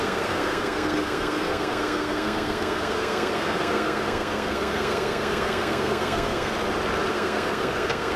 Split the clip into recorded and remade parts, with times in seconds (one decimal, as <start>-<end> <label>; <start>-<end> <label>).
0.0-6.5 remade; 6.5-7.1 recorded; 7.1-8.2 remade